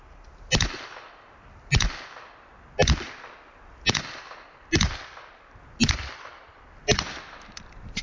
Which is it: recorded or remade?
recorded